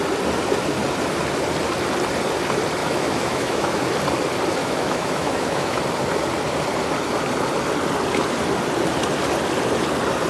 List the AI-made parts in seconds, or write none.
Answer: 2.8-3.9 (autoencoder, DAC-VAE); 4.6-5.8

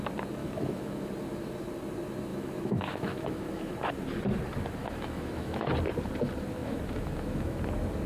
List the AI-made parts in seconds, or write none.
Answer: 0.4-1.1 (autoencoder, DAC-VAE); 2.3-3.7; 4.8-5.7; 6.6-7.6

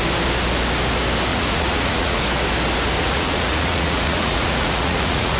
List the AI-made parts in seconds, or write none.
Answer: 1.3-2.2 (vocoder, Vocos); 3.0-5.4

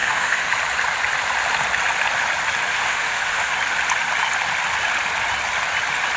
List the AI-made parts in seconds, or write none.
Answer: 0.0-0.5 (autoencoder, DAC-VAE); 2.7-3.5

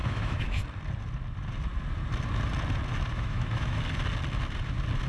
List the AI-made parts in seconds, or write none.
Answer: 0.0-0.6 (autoencoder, DAC-VAE); 3.1-3.8

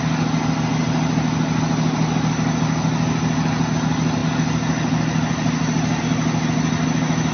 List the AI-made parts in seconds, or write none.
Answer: none

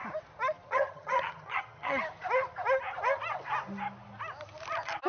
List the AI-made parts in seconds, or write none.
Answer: 0.7-2.0 (vocoder, HiFi-GAN)